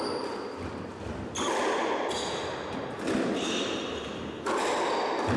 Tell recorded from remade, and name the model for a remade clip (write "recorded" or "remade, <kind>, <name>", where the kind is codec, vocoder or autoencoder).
recorded